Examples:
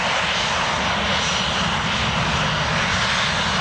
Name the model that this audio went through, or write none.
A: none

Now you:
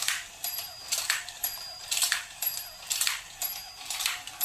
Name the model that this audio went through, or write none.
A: vocoder, BigVGAN v2